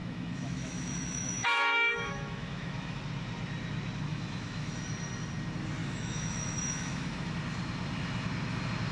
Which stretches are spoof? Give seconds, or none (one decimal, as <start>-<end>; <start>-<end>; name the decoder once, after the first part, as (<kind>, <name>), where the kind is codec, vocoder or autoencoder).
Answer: 0.0-3.0 (autoencoder, DAC-VAE); 4.1-4.7; 5.8-7.3